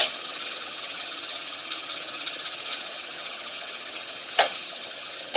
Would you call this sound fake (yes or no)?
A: yes